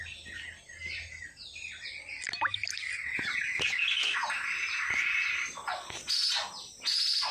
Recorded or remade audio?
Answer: recorded